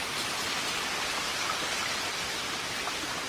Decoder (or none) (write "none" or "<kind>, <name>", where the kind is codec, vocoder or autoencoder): none